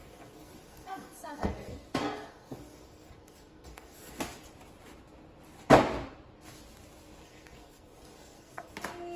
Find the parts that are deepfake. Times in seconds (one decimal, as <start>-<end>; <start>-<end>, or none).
0.0-4.2; 7.2-8.7